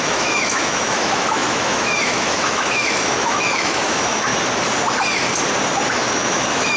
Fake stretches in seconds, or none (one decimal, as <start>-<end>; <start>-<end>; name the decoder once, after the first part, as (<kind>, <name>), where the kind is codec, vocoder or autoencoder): 0.0-4.3 (autoencoder, DAC-VAE); 6.1-6.8